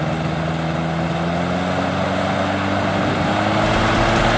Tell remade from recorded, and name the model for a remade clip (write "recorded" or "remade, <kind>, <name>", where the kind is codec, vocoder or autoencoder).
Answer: recorded